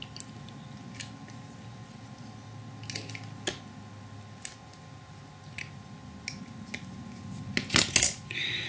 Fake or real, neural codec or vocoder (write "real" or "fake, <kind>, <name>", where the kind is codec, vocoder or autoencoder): real